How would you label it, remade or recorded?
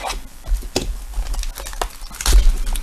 recorded